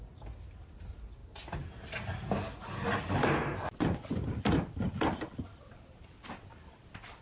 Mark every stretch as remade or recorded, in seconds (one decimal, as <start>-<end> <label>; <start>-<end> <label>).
0.0-7.2 recorded